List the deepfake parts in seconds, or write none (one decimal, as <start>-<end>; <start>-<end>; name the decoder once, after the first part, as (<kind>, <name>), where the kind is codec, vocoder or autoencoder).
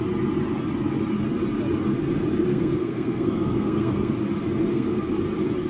2.5-4.1 (codec, SNAC); 4.7-5.2